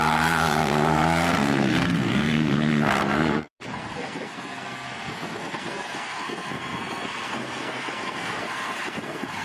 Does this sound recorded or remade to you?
remade